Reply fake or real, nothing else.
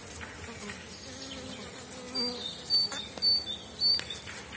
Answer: real